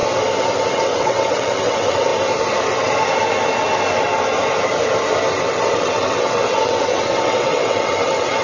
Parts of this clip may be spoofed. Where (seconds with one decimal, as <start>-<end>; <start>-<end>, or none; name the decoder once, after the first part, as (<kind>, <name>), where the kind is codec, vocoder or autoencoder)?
0.7-2.1 (vocoder, WaveNeXt); 5.4-8.4